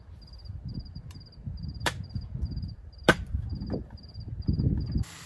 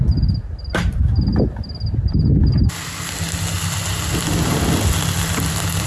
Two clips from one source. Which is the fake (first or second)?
first